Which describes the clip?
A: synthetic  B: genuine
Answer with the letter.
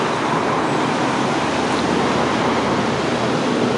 B